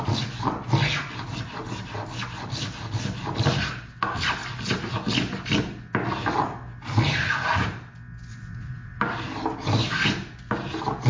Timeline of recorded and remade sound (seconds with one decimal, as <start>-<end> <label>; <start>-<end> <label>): 0.0-8.3 recorded; 8.3-9.0 remade; 9.0-11.1 recorded